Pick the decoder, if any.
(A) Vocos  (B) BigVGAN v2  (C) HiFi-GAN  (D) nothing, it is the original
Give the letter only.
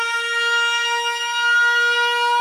D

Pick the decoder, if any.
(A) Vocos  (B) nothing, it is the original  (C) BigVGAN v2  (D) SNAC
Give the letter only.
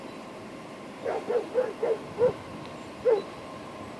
B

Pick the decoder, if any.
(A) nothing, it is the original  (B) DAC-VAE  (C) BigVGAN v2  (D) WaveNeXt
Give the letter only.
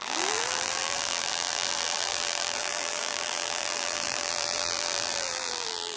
C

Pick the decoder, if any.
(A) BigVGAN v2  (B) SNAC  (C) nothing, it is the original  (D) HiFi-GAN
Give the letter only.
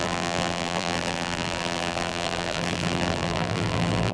A